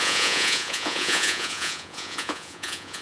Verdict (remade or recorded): remade